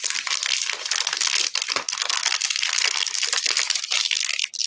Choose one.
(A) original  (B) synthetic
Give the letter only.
A